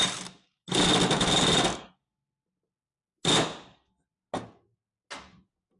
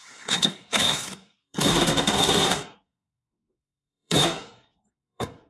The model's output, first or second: second